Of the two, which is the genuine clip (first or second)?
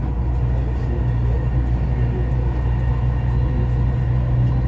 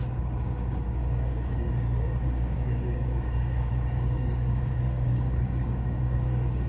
first